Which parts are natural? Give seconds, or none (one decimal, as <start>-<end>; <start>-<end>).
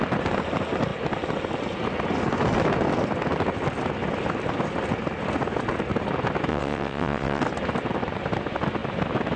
0.0-6.5; 7.4-9.4